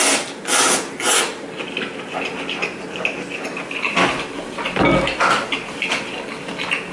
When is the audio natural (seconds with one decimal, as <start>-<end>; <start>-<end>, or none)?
0.0-6.9